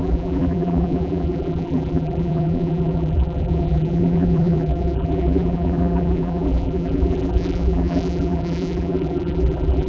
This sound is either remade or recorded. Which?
remade